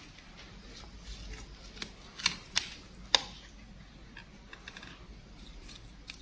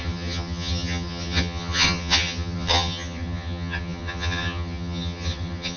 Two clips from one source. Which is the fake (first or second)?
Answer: second